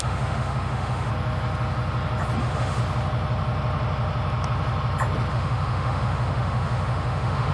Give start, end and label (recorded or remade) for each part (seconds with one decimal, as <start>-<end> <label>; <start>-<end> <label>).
0.0-1.1 remade; 1.1-2.4 recorded; 2.4-2.8 remade; 2.8-5.3 recorded; 5.3-7.5 remade